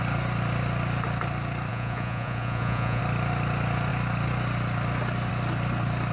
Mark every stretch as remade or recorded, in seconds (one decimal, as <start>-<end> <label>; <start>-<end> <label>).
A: 0.0-1.7 recorded; 1.7-3.0 remade; 3.0-6.1 recorded